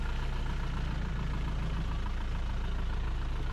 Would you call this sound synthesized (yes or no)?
no